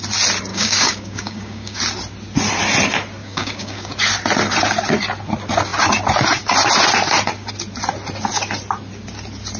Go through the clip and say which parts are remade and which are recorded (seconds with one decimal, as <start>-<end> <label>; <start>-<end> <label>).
0.0-0.5 recorded; 0.5-1.8 remade; 1.8-3.2 recorded; 3.2-3.9 remade; 3.9-9.6 recorded